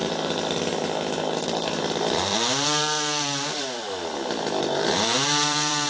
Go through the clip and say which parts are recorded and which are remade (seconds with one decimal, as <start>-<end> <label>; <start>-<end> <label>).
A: 0.0-0.8 remade; 0.8-2.3 recorded; 2.3-5.9 remade